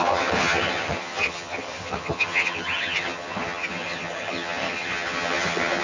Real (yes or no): no